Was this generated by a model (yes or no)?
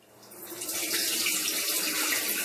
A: no